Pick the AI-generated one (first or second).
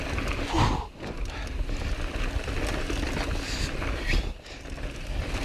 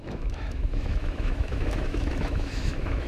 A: second